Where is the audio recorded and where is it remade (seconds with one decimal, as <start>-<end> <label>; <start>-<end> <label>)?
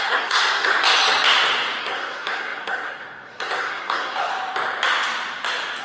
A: 0.0-0.7 remade; 0.7-1.8 recorded; 1.8-4.3 remade; 4.3-5.8 recorded